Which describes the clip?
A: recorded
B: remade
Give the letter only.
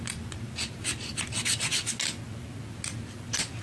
A